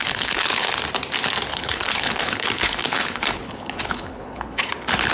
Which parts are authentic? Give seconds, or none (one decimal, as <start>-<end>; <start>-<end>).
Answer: 0.7-1.5; 4.6-5.1